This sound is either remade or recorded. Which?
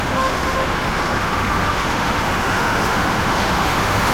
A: remade